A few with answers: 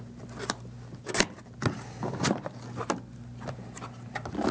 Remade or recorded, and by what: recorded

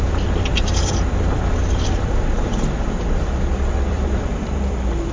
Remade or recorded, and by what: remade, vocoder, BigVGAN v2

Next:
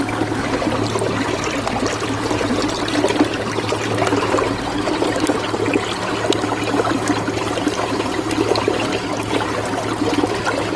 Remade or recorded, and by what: recorded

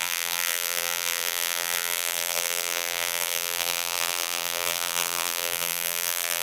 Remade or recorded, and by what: remade, vocoder, BigVGAN v2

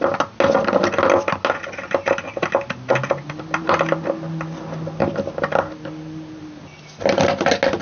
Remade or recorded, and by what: recorded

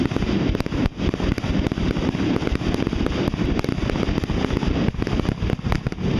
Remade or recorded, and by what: recorded